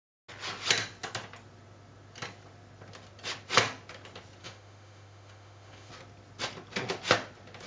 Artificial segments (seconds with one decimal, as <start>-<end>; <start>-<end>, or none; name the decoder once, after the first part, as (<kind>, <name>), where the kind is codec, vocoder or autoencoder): 4.4-5.9 (autoencoder, DAC-VAE)